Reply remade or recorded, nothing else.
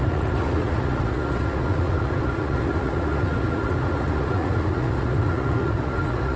remade